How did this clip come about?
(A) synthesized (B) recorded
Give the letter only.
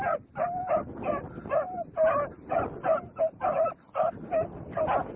B